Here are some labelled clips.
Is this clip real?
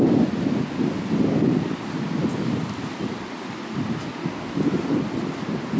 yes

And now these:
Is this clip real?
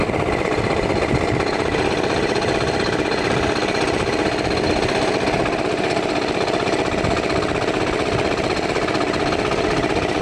yes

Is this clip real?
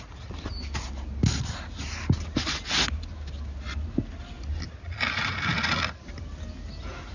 yes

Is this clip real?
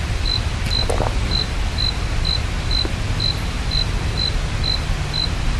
yes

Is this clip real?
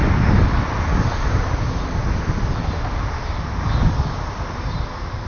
yes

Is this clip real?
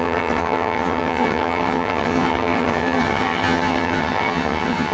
no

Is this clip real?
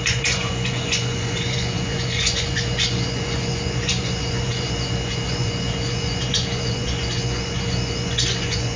no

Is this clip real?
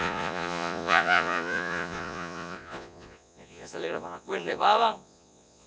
no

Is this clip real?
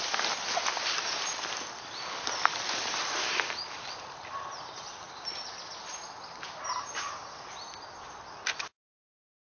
yes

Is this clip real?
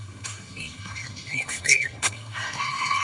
no